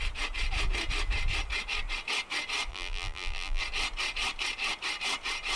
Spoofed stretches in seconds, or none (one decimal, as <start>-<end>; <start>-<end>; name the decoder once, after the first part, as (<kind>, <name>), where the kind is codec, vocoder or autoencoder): 2.7-3.6 (vocoder, BigVGAN v2)

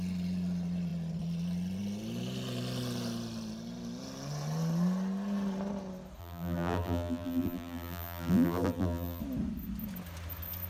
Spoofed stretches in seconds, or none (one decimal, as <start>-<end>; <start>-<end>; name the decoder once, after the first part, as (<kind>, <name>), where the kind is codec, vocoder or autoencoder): 6.2-9.2 (vocoder, BigVGAN v2)

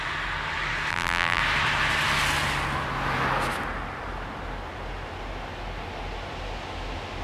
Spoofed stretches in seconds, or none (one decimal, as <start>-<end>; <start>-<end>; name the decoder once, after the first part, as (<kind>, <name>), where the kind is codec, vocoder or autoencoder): 0.9-1.4 (vocoder, BigVGAN v2)

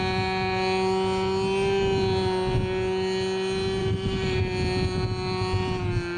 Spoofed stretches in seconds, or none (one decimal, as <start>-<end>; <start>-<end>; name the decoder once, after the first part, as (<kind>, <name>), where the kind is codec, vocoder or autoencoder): 3.8-4.4 (vocoder, BigVGAN v2)

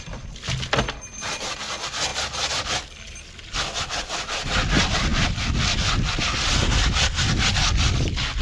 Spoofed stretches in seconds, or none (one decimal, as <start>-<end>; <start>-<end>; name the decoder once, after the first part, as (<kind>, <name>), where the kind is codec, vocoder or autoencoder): none

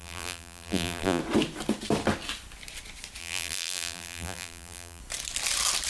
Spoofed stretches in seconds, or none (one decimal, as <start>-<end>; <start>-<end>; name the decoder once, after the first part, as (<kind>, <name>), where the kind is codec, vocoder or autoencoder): 0.0-1.2 (vocoder, BigVGAN v2); 3.2-5.0